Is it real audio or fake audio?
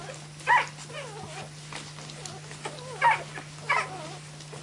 real